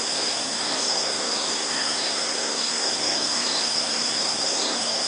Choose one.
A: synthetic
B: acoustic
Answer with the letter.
A